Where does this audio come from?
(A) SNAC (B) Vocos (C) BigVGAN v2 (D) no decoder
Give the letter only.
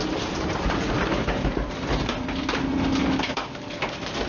D